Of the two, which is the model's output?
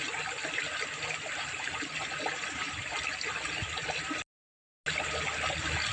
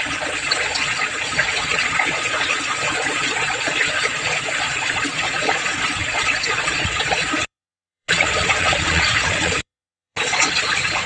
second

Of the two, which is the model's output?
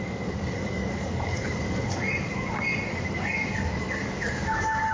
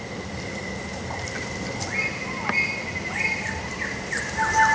first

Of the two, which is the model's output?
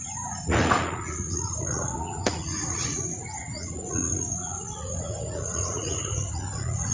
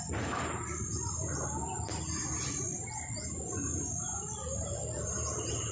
first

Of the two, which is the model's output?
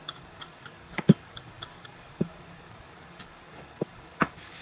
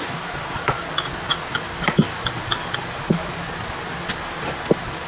first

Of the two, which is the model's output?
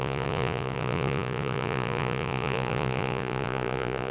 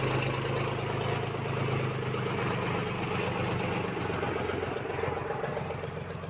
first